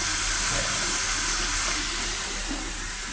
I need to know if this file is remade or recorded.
recorded